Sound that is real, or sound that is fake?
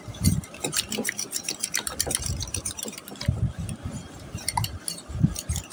fake